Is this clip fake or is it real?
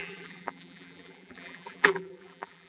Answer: fake